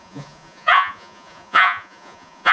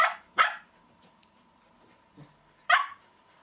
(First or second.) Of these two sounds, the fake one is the first